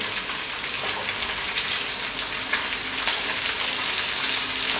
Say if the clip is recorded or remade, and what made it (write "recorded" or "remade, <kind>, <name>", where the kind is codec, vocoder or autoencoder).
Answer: recorded